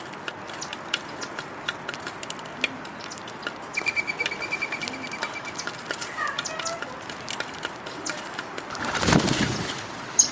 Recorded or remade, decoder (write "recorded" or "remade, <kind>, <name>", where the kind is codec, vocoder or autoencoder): recorded